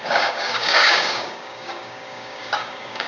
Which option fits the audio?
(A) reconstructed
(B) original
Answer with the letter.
A